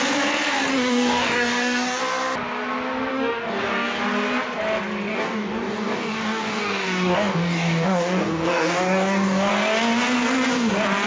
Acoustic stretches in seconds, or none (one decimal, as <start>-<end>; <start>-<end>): 0.0-0.7; 2.0-3.1; 4.0-5.1; 9.5-11.1